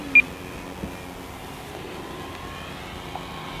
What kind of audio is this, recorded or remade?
recorded